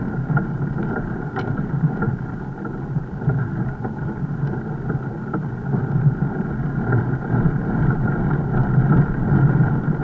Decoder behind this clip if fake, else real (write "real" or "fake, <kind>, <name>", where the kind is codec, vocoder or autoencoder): real